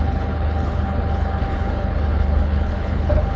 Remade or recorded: remade